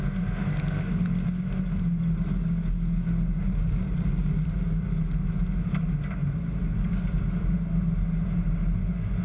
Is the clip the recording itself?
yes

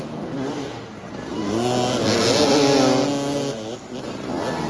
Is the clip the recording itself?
yes